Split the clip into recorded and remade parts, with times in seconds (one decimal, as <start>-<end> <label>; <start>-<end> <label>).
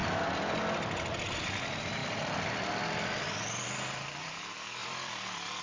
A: 0.0-0.6 remade; 0.6-2.0 recorded; 2.0-4.3 remade; 4.3-4.8 recorded; 4.8-5.6 remade